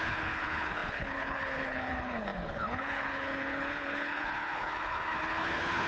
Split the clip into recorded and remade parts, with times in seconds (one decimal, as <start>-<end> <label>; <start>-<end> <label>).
0.0-5.9 remade